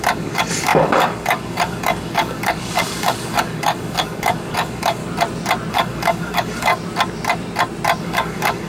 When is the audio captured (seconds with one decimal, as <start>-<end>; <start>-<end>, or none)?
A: 5.0-5.7; 6.7-8.0

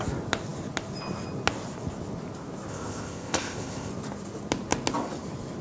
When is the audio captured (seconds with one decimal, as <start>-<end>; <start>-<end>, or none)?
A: 0.0-2.7; 3.9-5.6